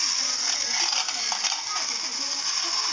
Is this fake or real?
real